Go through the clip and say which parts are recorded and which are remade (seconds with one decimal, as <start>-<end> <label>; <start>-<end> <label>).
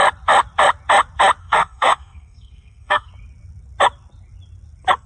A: 0.0-1.4 recorded; 1.4-3.1 remade; 3.1-5.1 recorded